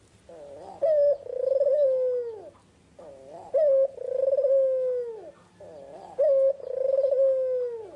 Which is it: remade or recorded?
recorded